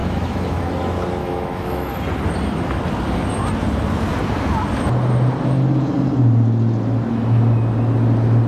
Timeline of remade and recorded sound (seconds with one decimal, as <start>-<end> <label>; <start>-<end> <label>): 0.0-0.7 remade; 0.7-1.2 recorded; 1.2-1.9 remade; 1.9-8.5 recorded